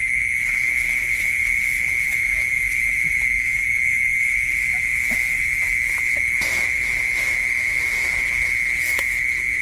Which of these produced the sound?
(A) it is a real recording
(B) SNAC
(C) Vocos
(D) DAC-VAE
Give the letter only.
D